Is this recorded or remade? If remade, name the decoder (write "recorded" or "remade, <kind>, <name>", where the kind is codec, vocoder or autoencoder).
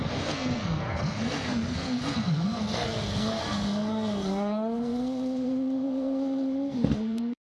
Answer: remade, codec, SNAC